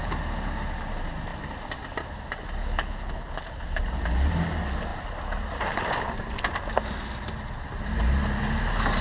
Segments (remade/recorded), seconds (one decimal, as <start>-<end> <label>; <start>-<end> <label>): 0.0-2.6 recorded; 2.6-3.8 remade; 3.8-9.0 recorded